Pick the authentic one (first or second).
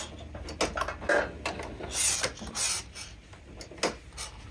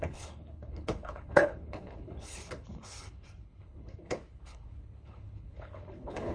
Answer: first